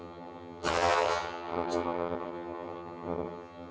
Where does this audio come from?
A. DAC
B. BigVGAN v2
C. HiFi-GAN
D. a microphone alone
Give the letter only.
C